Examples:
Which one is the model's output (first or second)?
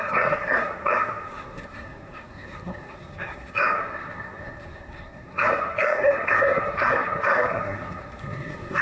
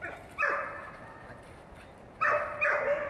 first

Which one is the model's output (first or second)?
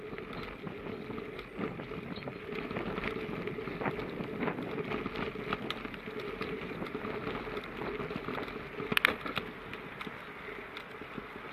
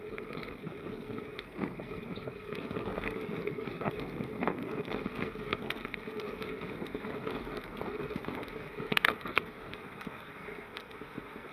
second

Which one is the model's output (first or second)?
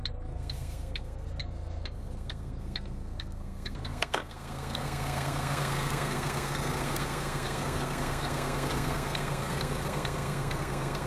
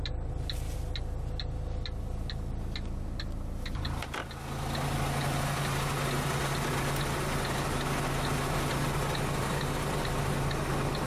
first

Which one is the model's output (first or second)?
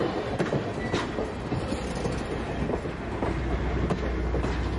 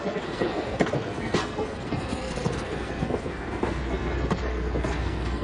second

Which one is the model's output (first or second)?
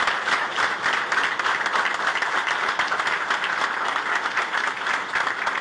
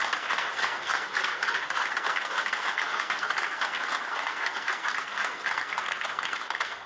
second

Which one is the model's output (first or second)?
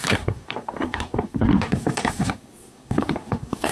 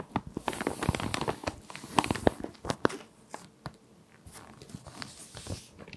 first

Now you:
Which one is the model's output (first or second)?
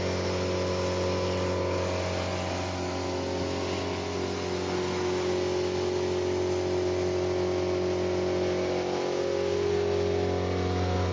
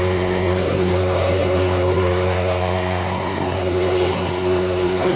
second